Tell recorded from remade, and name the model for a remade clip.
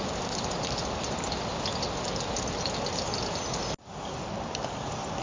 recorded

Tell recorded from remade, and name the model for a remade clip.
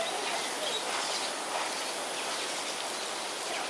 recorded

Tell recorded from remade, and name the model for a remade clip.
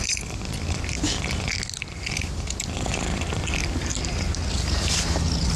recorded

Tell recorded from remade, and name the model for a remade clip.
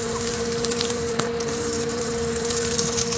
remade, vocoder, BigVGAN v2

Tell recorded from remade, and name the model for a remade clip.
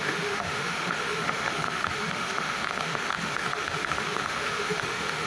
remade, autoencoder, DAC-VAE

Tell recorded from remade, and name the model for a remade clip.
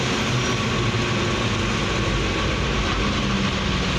recorded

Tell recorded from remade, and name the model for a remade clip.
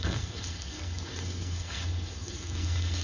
remade, codec, SNAC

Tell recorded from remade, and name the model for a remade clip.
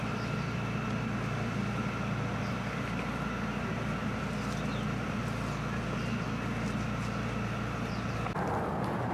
recorded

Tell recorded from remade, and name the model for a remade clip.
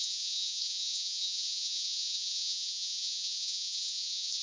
remade, vocoder, Vocos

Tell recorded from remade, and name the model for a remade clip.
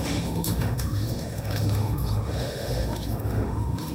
remade, autoencoder, DAC-VAE